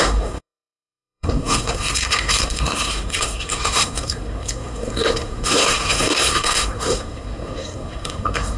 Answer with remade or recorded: remade